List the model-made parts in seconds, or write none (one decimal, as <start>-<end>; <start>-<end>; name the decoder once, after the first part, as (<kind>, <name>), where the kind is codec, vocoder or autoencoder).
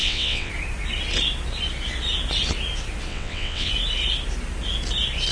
0.0-0.5 (vocoder, WaveNeXt); 3.1-3.7